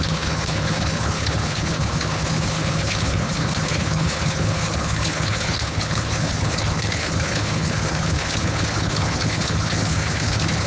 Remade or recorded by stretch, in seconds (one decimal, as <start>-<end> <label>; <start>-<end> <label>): 0.0-10.7 remade